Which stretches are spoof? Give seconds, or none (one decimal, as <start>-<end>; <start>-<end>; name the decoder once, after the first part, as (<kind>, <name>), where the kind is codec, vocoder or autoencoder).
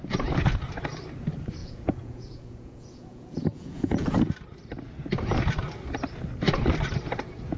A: 1.6-4.3 (vocoder, Vocos)